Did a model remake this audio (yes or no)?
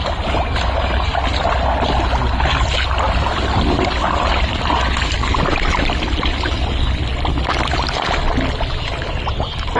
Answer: no